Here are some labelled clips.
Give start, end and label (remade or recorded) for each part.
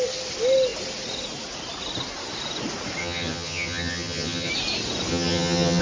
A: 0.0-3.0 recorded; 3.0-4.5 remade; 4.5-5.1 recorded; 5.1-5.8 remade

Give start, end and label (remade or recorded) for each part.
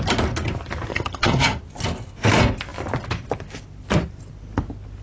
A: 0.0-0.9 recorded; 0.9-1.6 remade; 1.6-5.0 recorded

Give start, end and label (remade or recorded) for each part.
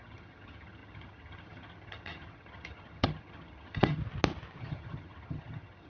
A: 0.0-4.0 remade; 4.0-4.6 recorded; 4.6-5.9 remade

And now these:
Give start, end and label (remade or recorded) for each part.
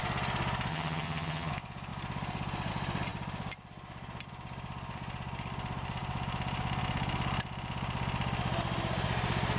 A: 0.0-0.7 recorded; 0.7-1.5 remade; 1.5-9.6 recorded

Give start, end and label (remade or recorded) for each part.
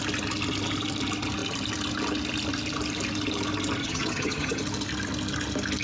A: 0.0-3.8 recorded; 3.8-4.6 remade; 4.6-5.8 recorded